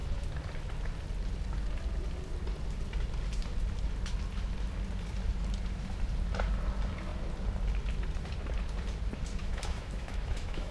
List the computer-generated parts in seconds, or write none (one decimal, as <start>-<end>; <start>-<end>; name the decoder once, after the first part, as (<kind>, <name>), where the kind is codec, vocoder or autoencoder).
9.4-10.7 (autoencoder, DAC-VAE)